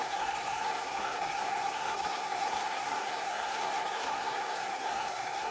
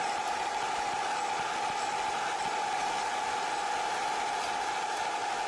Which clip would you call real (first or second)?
second